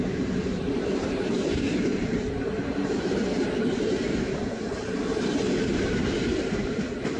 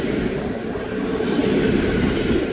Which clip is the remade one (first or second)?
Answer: first